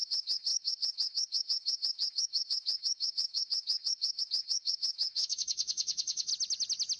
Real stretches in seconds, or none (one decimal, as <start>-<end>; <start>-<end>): 6.3-7.0